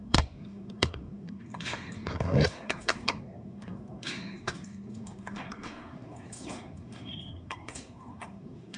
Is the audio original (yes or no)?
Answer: no